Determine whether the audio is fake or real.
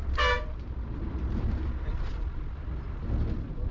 real